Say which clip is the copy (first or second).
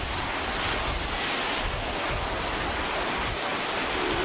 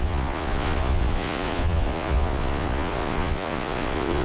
second